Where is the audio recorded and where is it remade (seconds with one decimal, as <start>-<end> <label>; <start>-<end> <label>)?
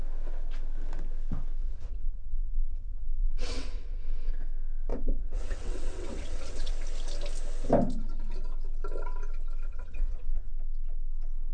0.0-1.6 recorded; 1.6-4.3 remade; 4.3-4.9 recorded; 4.9-6.7 remade; 6.7-9.7 recorded; 9.7-10.5 remade; 10.5-11.5 recorded